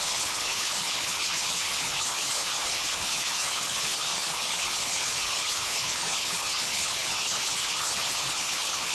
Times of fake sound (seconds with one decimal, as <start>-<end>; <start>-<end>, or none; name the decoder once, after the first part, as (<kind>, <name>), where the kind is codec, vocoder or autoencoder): 0.0-8.9 (codec, HILCodec)